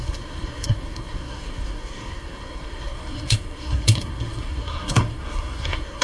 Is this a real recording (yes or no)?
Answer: no